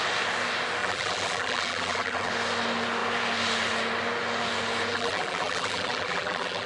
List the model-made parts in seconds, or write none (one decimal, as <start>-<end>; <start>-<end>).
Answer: 0.8-2.3; 4.9-6.7